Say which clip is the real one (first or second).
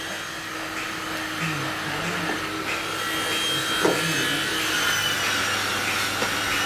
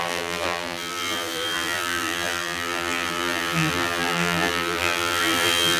first